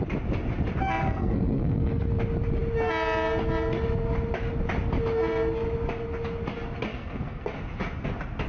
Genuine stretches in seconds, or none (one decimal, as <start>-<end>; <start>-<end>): 0.0-1.0; 2.0-6.9; 7.5-8.5